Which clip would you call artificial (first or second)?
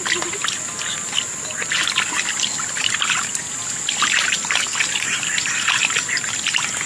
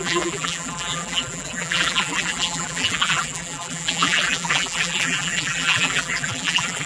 second